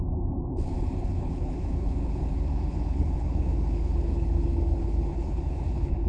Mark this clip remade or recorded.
remade